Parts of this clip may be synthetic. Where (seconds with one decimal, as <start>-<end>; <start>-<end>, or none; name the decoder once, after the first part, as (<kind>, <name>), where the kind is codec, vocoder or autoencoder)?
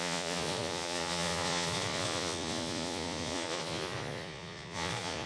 0.0-5.3 (vocoder, Vocos)